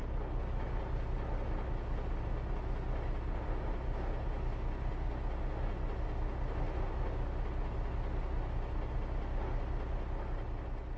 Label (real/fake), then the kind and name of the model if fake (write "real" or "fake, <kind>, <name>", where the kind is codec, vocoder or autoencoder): real